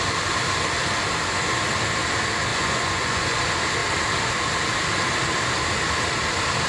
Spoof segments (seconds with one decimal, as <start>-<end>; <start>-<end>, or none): 2.5-3.4